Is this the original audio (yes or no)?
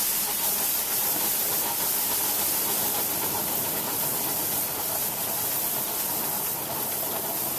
yes